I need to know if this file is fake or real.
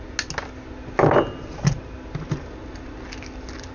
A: real